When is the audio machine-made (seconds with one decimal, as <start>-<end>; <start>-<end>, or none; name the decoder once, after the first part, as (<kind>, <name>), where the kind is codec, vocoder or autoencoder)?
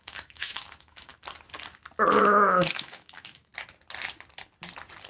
0.0-1.1 (autoencoder, DAC-VAE); 2.2-3.5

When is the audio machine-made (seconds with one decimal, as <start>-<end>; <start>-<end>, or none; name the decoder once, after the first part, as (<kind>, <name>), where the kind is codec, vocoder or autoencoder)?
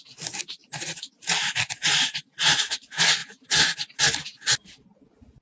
0.6-1.5 (vocoder, BigVGAN v2)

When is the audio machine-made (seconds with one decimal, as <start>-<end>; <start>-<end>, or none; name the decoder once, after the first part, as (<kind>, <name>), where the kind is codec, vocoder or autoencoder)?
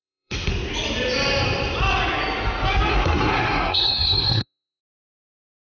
0.0-0.5 (codec, SNAC); 2.9-4.8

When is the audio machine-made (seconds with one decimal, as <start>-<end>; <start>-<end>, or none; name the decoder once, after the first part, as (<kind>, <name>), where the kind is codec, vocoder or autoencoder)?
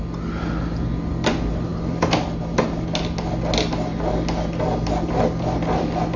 none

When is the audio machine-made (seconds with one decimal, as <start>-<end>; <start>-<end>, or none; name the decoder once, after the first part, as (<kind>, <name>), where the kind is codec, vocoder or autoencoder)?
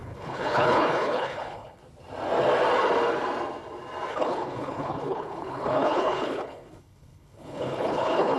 0.0-1.8 (codec, HILCodec); 4.1-8.4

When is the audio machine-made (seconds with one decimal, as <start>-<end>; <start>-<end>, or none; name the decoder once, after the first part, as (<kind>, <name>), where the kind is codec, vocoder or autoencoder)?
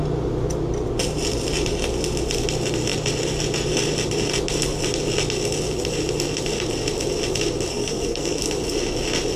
7.7-8.4 (codec, SNAC)